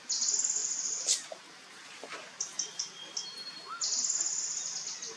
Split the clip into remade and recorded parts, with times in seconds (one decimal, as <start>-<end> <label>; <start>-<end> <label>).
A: 0.0-5.2 recorded